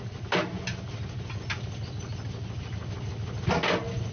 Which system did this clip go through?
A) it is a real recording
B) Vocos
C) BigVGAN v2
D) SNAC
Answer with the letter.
A